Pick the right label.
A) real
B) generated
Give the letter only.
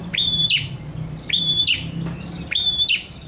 B